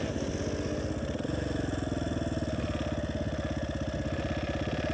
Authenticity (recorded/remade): recorded